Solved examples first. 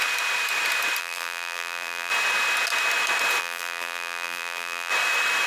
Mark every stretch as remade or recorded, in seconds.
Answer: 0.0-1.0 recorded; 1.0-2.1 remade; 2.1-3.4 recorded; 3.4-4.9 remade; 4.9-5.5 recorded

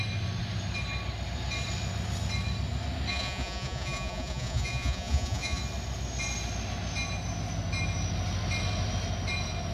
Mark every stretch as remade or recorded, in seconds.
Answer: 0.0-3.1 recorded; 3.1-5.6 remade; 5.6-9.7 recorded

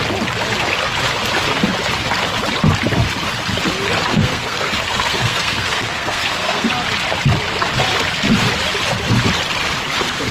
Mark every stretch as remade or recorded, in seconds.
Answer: 0.0-4.1 recorded; 4.1-6.7 remade; 6.7-10.3 recorded

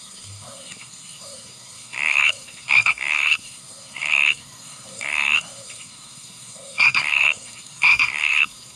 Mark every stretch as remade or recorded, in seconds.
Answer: 0.0-8.8 remade

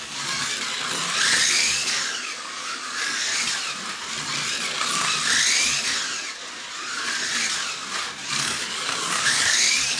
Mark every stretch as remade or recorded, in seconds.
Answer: 0.0-0.5 remade; 0.5-1.4 recorded; 1.4-3.3 remade; 3.3-8.3 recorded; 8.3-10.0 remade

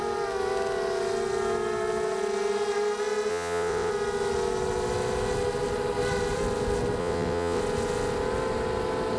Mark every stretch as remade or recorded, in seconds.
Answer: 0.0-3.3 recorded; 3.3-3.9 remade; 3.9-7.0 recorded; 7.0-7.6 remade; 7.6-9.2 recorded

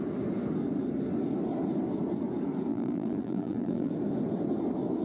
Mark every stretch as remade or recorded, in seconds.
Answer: 0.0-2.7 recorded; 2.7-3.9 remade; 3.9-5.0 recorded